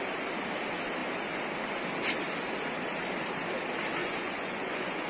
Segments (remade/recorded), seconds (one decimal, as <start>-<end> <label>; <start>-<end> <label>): 0.0-4.0 recorded; 4.0-5.1 remade